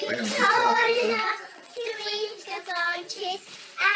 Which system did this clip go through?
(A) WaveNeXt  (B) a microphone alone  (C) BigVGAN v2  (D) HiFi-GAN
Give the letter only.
A